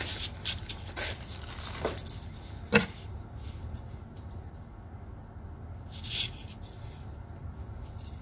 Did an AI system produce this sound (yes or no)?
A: no